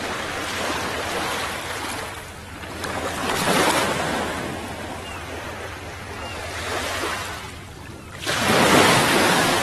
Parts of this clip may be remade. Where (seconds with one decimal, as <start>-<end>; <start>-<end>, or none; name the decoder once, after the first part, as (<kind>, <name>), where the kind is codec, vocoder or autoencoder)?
8.7-9.6 (codec, DAC)